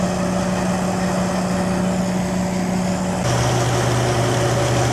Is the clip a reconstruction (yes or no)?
no